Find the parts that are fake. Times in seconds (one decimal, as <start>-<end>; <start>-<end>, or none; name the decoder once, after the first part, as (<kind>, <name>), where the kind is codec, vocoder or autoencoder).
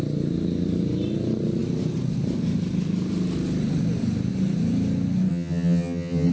5.3-6.3 (vocoder, HiFi-GAN)